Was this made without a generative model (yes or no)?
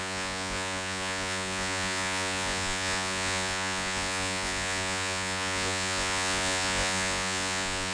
no